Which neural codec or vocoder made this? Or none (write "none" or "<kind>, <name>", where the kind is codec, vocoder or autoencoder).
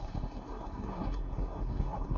codec, SNAC